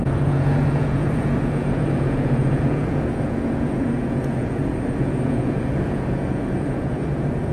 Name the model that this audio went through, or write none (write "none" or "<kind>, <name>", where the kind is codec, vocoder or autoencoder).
vocoder, Vocos